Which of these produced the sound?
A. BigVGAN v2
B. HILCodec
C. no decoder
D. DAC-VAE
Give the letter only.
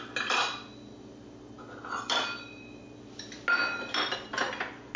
C